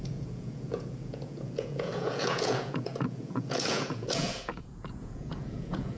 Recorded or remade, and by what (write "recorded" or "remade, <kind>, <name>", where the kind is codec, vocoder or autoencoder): remade, vocoder, Vocos